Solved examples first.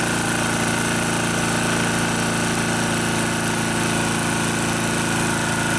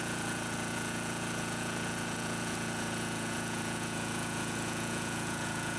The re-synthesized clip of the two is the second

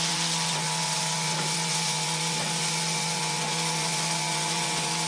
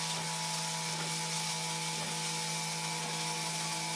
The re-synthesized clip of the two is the first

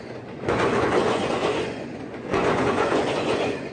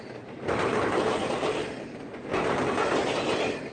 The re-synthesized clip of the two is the first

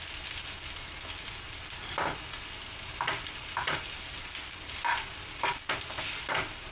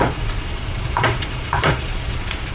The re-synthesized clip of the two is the second